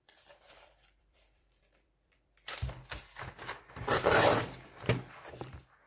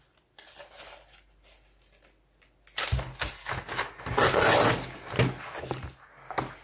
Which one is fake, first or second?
first